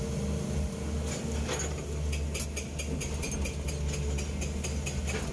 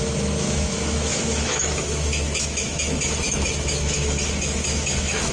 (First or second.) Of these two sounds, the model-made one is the second